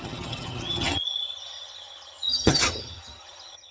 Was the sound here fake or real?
fake